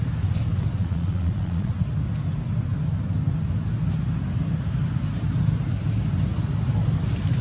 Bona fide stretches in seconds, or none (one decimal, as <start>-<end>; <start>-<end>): 0.0-0.8; 1.7-7.4